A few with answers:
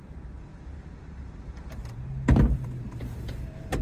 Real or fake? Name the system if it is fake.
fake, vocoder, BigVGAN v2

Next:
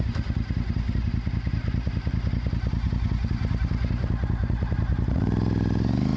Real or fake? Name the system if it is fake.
real